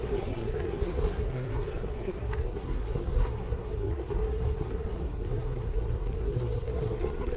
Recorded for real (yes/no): no